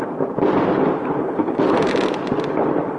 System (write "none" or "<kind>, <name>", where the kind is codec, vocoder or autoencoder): none